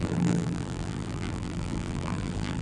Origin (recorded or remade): remade